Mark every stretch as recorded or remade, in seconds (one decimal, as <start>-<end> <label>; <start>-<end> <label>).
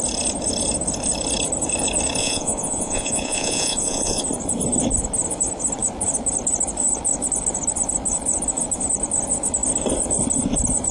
0.0-2.2 recorded; 2.2-4.2 remade; 4.2-10.9 recorded